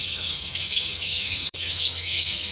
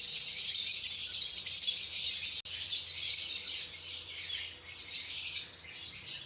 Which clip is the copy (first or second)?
first